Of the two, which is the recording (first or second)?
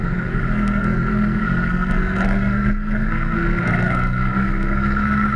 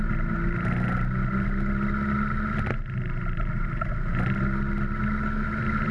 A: second